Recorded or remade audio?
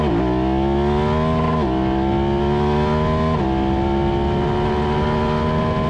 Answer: recorded